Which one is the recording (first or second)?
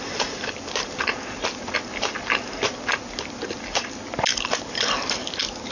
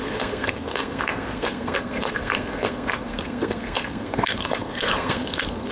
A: first